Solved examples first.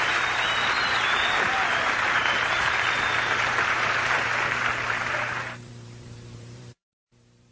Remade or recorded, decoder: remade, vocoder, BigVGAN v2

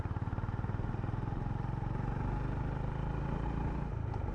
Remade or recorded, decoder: recorded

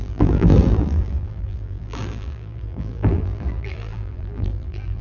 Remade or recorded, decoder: remade, vocoder, BigVGAN v2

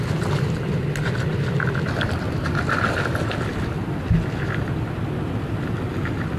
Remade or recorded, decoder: recorded